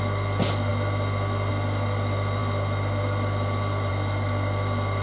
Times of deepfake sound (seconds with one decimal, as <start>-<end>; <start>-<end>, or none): none